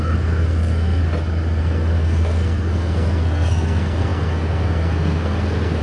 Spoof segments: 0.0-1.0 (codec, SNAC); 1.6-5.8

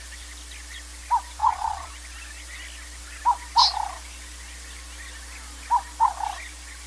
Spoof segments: 1.4-1.9 (vocoder, Vocos)

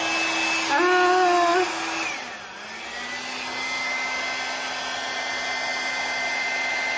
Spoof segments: none